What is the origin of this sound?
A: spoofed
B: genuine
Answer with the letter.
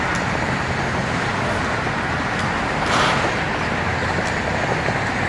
B